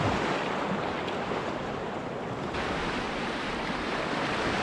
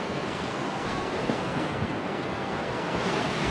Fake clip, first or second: second